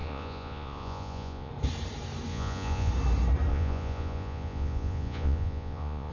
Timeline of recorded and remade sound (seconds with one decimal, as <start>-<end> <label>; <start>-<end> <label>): 0.0-1.5 remade; 1.5-2.3 recorded; 2.3-2.9 remade; 2.9-3.5 recorded; 3.5-6.1 remade